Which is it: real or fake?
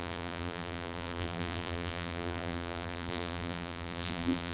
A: fake